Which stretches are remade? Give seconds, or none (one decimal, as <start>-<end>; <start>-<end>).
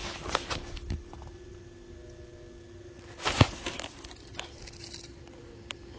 none